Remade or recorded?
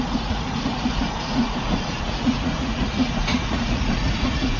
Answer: remade